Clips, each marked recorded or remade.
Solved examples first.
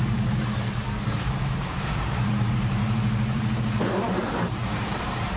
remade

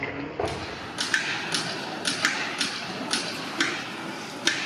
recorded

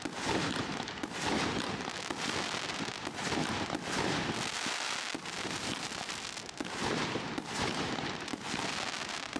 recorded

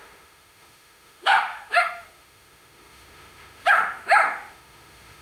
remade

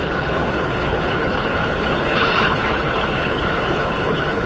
remade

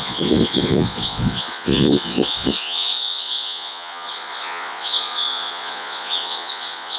remade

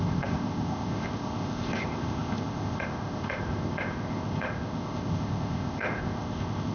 remade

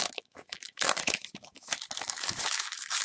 remade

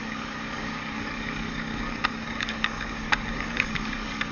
remade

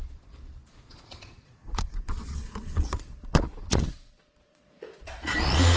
remade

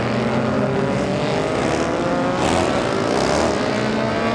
recorded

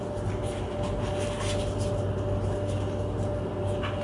recorded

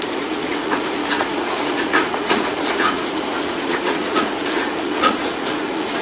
remade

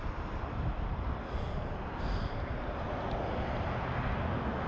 recorded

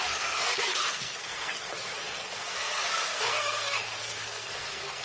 remade